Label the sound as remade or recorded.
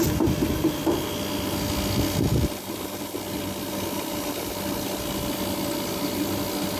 recorded